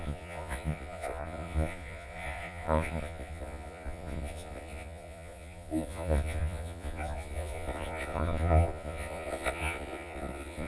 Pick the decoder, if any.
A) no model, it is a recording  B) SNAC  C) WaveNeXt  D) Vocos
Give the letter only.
D